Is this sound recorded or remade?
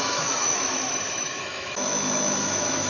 remade